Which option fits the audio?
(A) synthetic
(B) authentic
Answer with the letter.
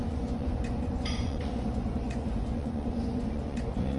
A